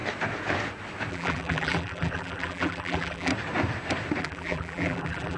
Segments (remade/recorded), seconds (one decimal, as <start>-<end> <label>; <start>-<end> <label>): 0.0-1.1 recorded; 1.1-3.3 remade; 3.3-4.2 recorded; 4.2-5.4 remade